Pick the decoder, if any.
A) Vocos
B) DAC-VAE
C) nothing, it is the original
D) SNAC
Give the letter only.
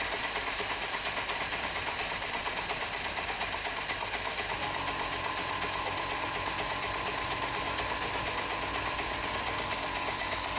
C